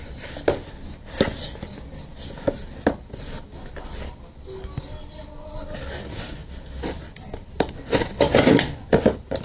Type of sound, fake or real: real